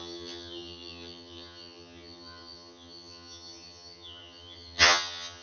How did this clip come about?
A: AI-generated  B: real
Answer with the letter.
A